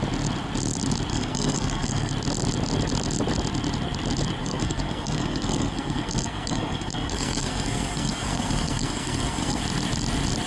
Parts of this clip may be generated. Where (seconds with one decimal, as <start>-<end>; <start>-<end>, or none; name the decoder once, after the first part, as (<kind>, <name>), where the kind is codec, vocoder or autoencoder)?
1.1-2.1 (codec, SNAC); 4.4-9.6